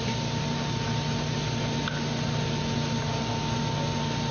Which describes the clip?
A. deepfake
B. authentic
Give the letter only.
B